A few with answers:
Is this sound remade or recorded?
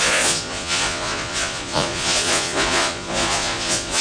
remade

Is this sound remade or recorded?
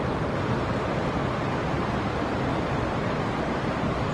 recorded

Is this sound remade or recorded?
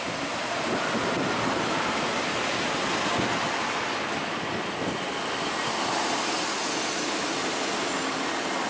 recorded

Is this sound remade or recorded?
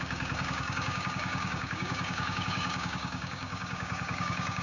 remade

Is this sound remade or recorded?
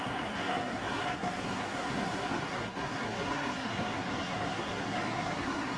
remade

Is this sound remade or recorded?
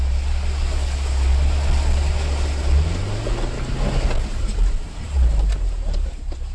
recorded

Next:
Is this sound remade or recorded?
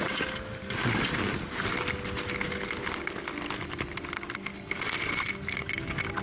recorded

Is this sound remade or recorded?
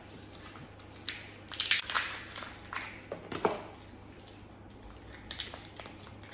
recorded